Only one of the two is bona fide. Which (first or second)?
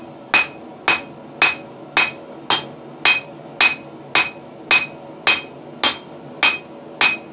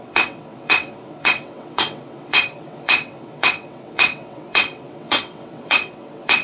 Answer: first